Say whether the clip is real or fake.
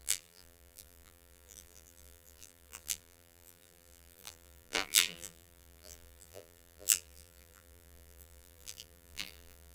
fake